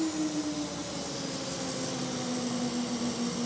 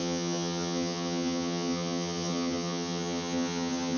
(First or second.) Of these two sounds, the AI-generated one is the second